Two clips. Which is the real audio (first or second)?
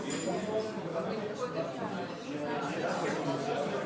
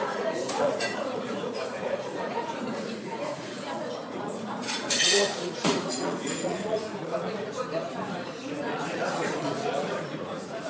first